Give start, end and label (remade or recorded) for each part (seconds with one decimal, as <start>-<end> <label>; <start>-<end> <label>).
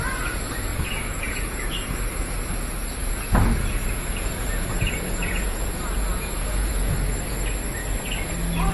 0.0-0.7 recorded; 0.7-1.9 remade; 1.9-3.0 recorded; 3.0-6.7 remade; 6.7-8.7 recorded